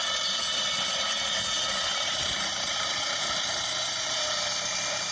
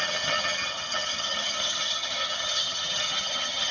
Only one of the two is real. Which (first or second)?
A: first